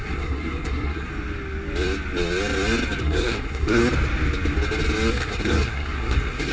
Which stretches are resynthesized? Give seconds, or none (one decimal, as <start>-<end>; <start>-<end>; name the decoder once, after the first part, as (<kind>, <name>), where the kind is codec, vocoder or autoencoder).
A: 0.0-1.1 (codec, SNAC); 3.0-3.8; 5.1-6.5